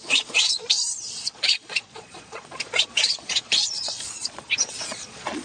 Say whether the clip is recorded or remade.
remade